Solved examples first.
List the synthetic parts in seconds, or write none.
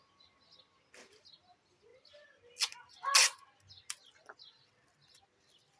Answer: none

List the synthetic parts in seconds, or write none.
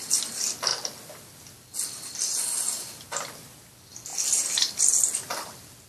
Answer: none